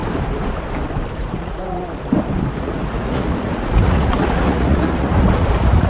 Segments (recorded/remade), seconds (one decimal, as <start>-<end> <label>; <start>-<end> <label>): 0.0-1.2 recorded; 1.2-1.8 remade; 1.8-2.6 recorded; 2.6-5.9 remade